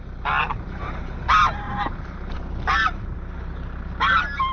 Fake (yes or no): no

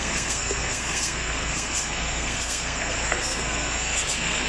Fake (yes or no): yes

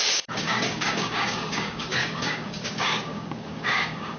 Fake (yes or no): yes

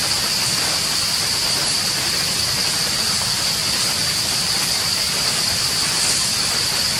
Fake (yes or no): no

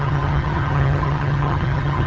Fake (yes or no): yes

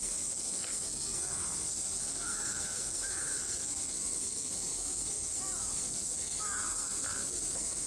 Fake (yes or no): yes